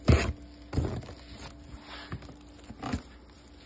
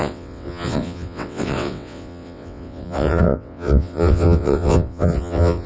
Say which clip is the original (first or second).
first